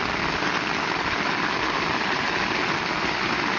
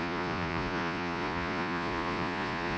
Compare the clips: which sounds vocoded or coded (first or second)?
second